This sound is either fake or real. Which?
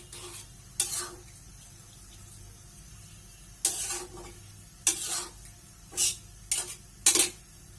real